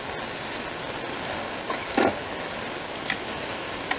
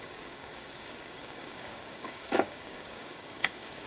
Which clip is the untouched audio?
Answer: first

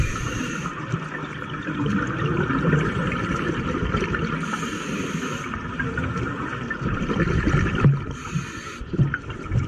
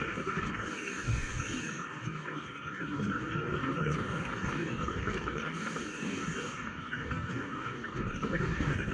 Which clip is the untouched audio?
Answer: first